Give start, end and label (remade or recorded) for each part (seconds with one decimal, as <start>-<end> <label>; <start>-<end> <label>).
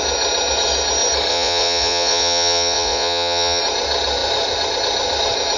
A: 0.0-1.3 recorded; 1.3-3.6 remade; 3.6-5.6 recorded